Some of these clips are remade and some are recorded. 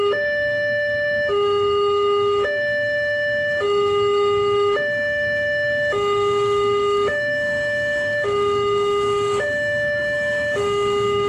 remade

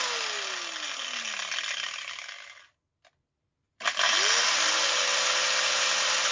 recorded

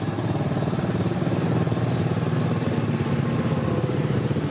recorded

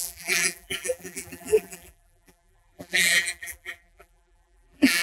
remade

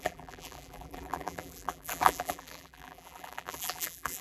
remade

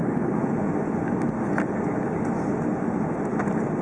recorded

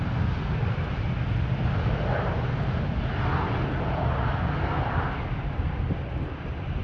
recorded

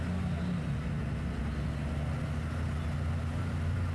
recorded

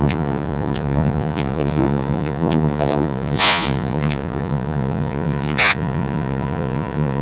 remade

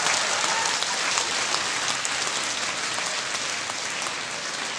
recorded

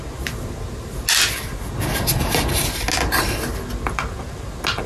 recorded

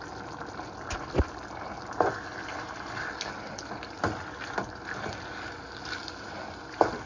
recorded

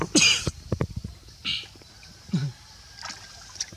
recorded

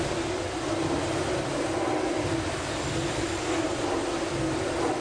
recorded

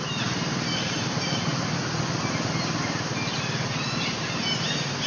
recorded